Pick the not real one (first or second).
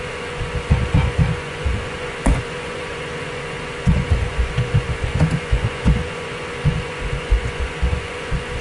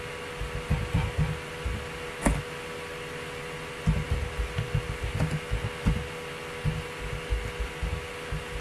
first